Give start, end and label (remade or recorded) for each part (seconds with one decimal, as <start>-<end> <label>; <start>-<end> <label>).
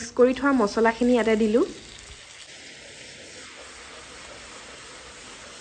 0.0-5.6 recorded